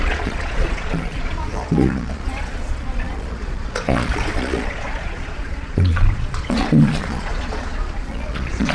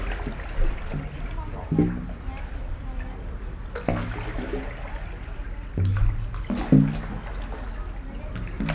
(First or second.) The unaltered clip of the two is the second